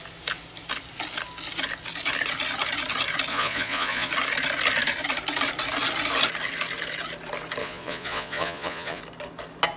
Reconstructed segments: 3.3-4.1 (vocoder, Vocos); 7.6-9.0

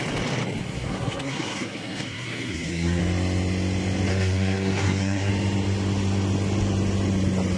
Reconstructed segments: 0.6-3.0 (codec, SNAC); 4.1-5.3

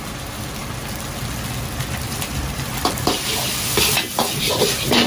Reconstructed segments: 0.0-0.6 (vocoder, BigVGAN v2); 1.8-5.1

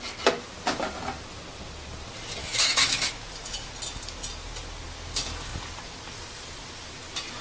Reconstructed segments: 2.4-3.1 (autoencoder, DAC-VAE)